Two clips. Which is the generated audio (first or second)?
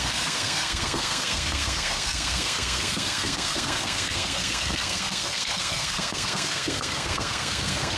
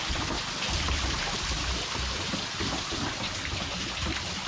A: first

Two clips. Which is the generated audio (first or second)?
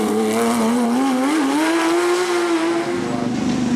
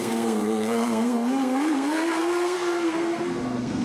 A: second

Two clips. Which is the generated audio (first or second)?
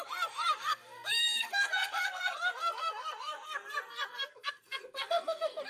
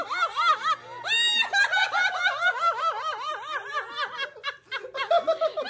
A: first